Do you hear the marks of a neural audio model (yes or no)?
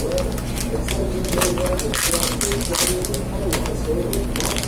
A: no